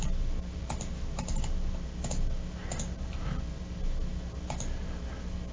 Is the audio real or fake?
real